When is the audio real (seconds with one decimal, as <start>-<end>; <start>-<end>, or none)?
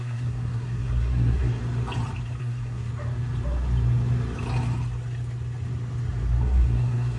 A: 1.6-2.4; 2.9-6.4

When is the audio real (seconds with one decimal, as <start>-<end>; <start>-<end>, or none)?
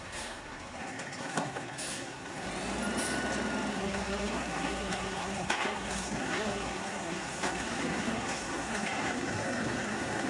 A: 2.5-3.7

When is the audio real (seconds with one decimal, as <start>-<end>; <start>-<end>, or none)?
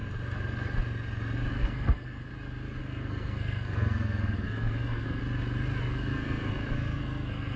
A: 0.0-1.5; 2.3-2.8; 5.2-5.8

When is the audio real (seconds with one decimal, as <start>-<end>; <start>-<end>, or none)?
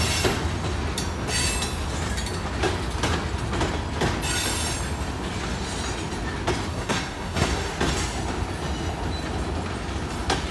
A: 0.0-6.7; 7.7-10.5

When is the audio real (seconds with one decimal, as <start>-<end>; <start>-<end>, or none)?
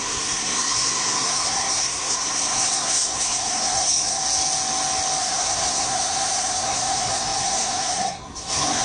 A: 4.2-5.2